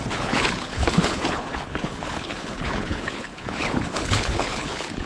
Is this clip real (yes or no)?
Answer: no